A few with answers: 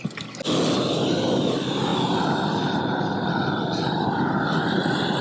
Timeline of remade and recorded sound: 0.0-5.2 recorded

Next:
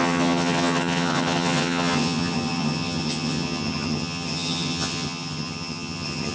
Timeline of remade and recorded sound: 0.0-6.3 remade

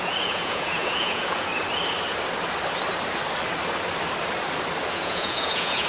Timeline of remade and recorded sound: 0.0-1.5 remade; 1.5-4.9 recorded; 4.9-5.9 remade

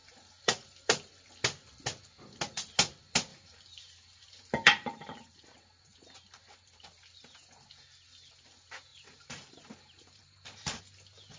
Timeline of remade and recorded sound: 0.0-1.3 remade; 1.3-3.3 recorded; 3.3-6.7 remade; 6.7-8.9 recorded; 8.9-10.8 remade; 10.8-11.4 recorded

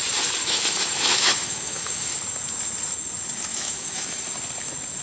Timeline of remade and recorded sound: 0.0-0.4 recorded; 0.4-2.1 remade; 2.1-3.5 recorded; 3.5-4.2 remade; 4.2-5.0 recorded

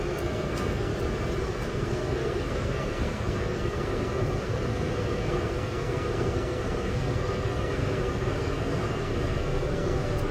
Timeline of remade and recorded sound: 0.0-0.9 remade; 0.9-1.4 recorded; 1.4-10.3 remade

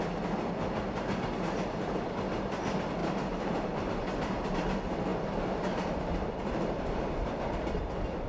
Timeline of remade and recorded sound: 0.0-3.0 recorded; 3.0-3.9 remade; 3.9-5.1 recorded; 5.1-7.8 remade; 7.8-8.3 recorded